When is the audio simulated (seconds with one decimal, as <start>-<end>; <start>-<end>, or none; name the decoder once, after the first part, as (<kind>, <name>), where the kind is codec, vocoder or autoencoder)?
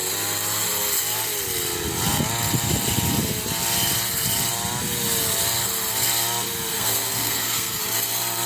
6.7-7.8 (codec, SNAC)